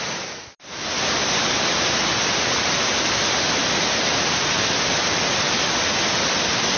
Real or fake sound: real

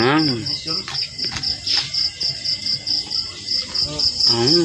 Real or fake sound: real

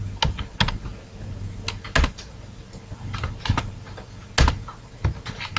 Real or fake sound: real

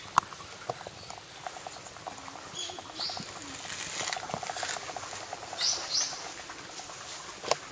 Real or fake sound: real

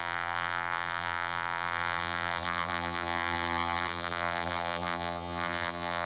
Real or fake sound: fake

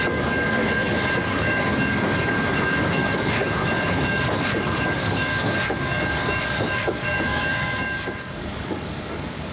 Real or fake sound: fake